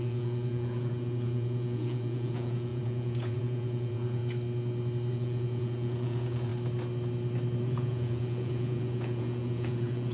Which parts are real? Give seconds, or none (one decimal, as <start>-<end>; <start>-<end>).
4.2-5.1; 6.5-7.6